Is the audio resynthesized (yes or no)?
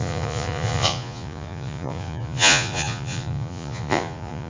yes